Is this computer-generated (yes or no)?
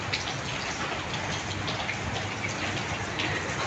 no